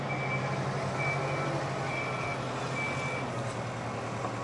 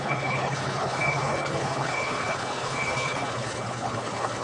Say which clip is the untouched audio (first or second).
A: first